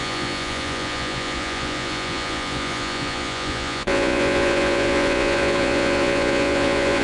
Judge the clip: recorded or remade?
remade